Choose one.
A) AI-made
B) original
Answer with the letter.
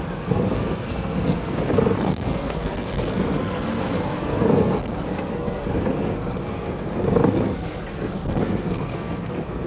A